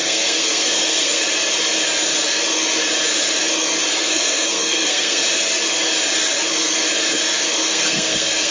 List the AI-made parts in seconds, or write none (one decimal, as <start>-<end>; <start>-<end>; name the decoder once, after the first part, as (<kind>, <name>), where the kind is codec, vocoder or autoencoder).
0.0-1.2 (codec, SNAC); 3.9-5.2; 7.7-8.5